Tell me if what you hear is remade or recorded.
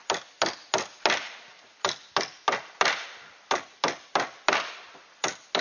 recorded